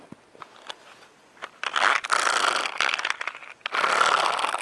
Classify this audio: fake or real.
real